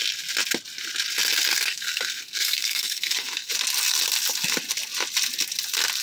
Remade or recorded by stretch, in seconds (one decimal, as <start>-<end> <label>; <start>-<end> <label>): 0.0-1.5 recorded; 1.5-3.5 remade; 3.5-6.0 recorded